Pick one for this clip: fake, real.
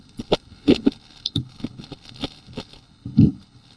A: fake